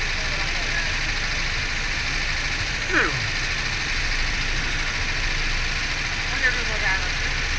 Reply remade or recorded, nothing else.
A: recorded